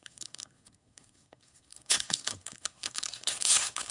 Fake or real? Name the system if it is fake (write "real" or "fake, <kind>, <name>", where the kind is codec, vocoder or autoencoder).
fake, codec, SNAC